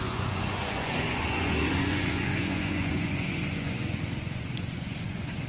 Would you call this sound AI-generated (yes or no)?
yes